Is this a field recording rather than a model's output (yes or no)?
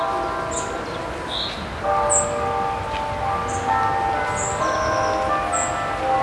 yes